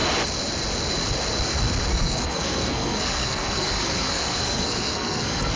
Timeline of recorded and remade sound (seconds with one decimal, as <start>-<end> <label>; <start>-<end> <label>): 0.0-1.9 recorded; 1.9-5.6 remade